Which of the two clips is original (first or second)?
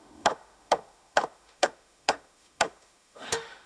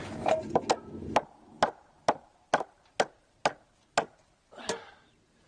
second